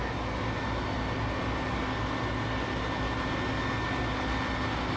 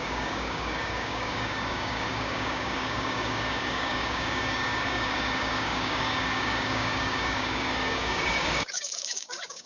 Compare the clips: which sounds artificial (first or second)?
second